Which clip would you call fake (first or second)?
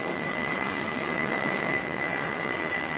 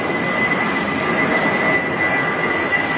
first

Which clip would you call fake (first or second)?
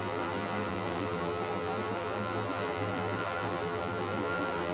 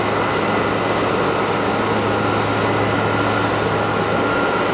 first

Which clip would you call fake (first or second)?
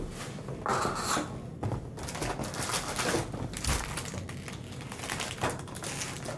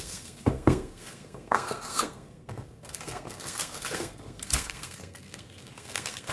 second